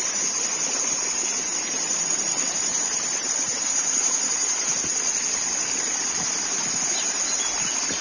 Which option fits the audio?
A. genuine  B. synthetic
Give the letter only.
A